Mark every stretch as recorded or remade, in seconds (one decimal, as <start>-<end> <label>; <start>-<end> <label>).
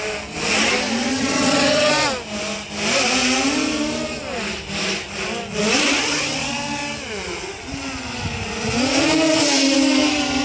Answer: 0.0-1.1 recorded; 1.1-1.9 remade; 1.9-10.4 recorded